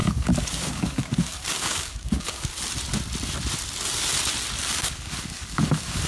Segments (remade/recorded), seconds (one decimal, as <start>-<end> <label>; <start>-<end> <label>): 0.0-2.5 remade; 2.5-4.6 recorded; 4.6-6.1 remade